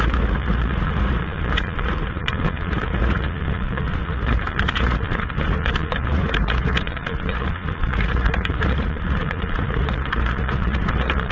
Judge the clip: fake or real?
fake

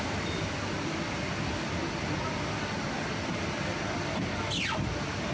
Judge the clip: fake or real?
real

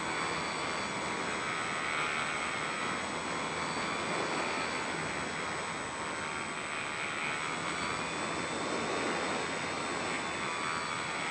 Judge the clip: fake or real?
real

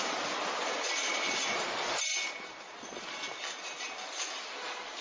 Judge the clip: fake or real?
real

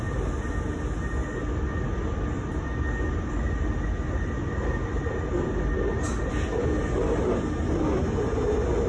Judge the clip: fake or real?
real